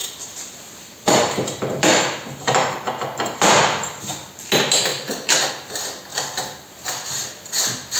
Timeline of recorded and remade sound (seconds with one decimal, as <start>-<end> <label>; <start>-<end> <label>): 0.0-4.0 remade; 4.0-4.9 recorded; 4.9-5.5 remade; 5.5-6.1 recorded; 6.1-6.7 remade; 6.7-8.0 recorded